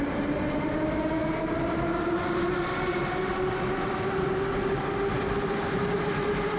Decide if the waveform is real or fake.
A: real